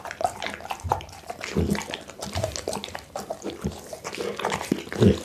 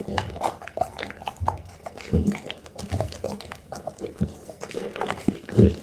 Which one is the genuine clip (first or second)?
first